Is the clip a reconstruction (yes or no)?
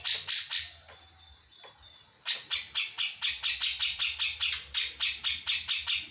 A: no